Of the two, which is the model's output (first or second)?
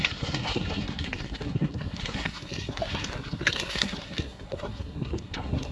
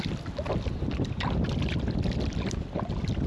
first